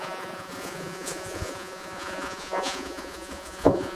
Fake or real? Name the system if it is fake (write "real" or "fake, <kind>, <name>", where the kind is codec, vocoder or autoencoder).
fake, vocoder, Vocos